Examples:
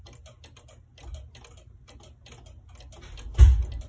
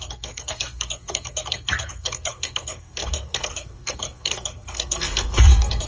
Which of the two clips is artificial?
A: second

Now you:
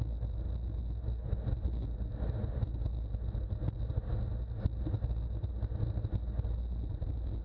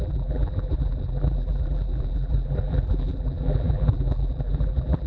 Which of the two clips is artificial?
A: second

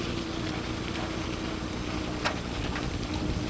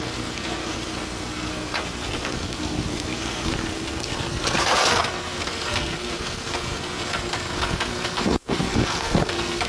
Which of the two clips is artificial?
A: second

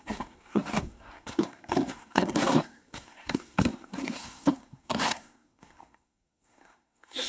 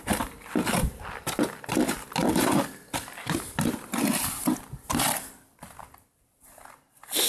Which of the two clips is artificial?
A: first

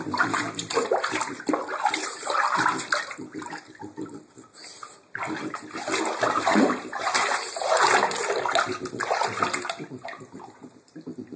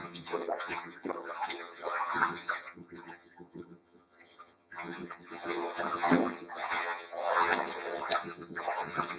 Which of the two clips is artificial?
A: second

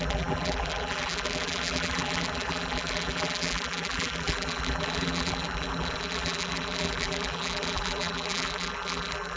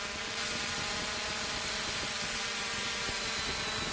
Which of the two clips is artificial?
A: first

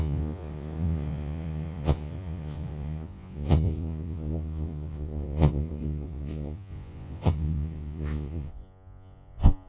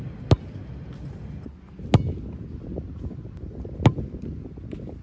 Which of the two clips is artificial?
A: first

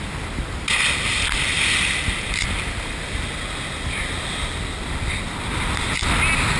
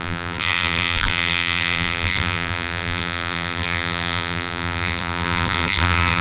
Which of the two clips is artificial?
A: second